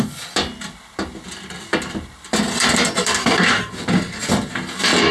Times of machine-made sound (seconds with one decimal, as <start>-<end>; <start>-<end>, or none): 3.2-3.7